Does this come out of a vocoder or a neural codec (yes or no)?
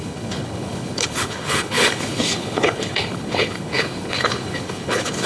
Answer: yes